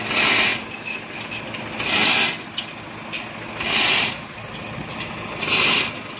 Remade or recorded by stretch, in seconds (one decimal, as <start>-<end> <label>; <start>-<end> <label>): 0.0-6.2 recorded